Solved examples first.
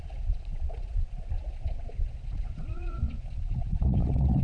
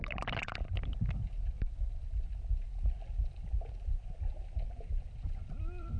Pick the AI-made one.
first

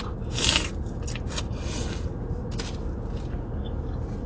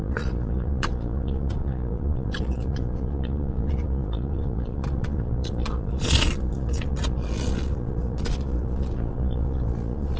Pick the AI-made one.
second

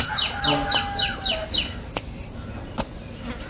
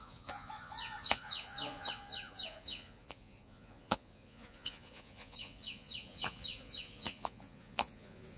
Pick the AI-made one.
second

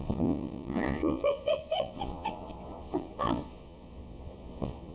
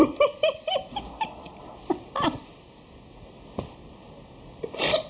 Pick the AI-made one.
first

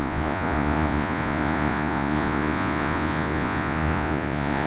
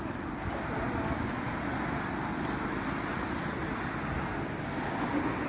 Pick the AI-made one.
first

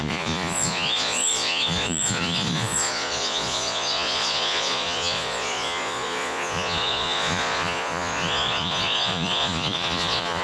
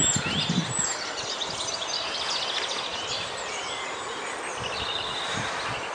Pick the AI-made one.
first